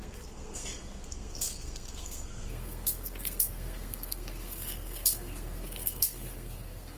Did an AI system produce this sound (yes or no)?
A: yes